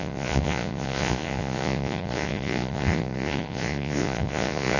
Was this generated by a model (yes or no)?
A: yes